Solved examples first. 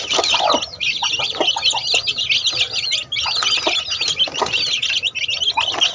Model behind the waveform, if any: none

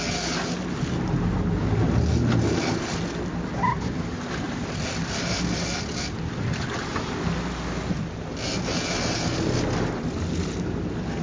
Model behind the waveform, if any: none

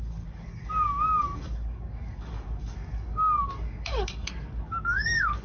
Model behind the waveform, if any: codec, DAC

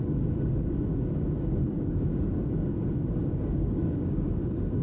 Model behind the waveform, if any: codec, DAC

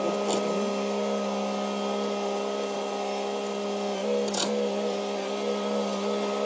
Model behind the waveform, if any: none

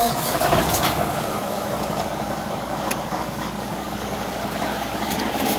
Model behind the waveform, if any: codec, DAC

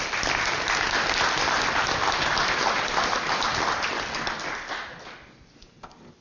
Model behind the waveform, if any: none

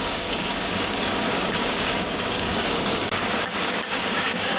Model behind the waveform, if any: codec, DAC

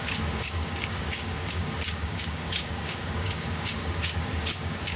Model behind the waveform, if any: codec, DAC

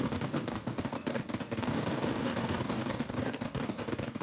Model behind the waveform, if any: codec, DAC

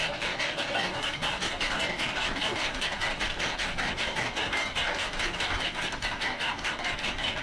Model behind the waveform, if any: codec, DAC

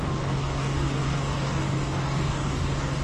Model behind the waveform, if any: codec, DAC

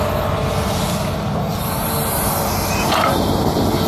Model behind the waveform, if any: none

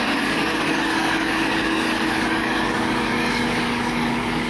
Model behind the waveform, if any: codec, DAC